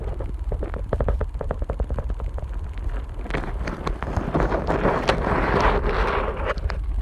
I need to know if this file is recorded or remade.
remade